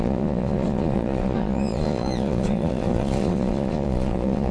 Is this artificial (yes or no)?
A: yes